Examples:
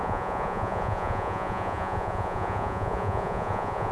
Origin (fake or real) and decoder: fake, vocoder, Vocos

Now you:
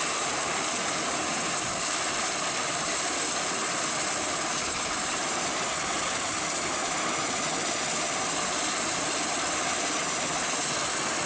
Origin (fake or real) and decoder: fake, vocoder, BigVGAN v2